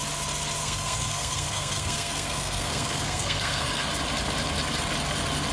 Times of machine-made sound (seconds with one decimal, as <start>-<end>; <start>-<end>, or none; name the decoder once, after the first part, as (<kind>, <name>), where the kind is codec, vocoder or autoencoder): 0.6-3.9 (codec, SNAC)